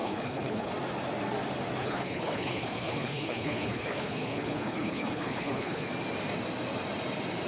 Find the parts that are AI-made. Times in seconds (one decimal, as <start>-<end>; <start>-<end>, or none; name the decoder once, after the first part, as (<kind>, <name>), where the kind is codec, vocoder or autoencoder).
0.0-0.7 (codec, HILCodec); 1.8-5.9